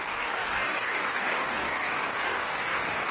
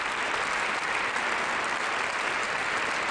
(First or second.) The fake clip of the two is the first